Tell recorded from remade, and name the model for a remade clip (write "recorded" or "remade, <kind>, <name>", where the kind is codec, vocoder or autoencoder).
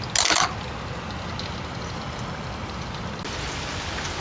recorded